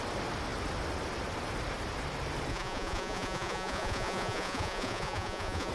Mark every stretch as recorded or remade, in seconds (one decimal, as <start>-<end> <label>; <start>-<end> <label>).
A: 0.0-2.5 recorded; 2.5-5.7 remade